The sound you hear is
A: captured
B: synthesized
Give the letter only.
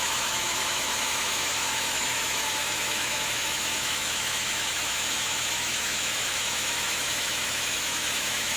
B